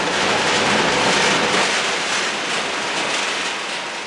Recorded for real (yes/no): yes